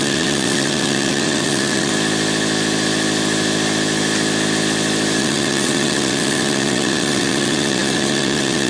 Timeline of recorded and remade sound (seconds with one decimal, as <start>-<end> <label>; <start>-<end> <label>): 0.0-1.9 remade; 1.9-5.2 recorded; 5.2-8.7 remade